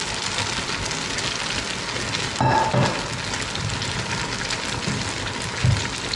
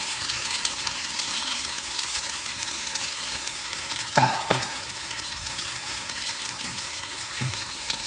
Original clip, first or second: first